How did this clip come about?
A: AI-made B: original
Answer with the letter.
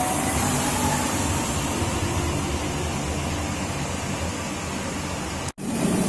B